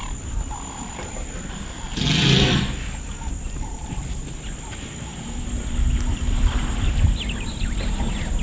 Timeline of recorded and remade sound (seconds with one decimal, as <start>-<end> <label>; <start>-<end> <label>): 0.0-8.4 recorded